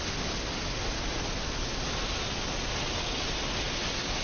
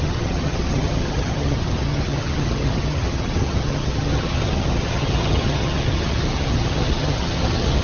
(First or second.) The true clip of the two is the first